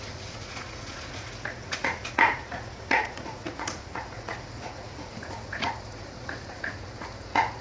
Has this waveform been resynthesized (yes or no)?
yes